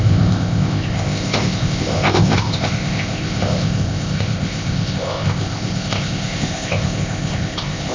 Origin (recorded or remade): remade